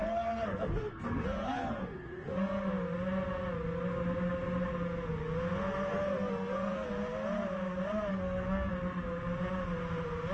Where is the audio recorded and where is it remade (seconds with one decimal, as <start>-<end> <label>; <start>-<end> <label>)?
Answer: 0.0-2.7 remade; 2.7-5.9 recorded; 5.9-6.9 remade; 6.9-8.1 recorded; 8.1-8.7 remade; 8.7-10.3 recorded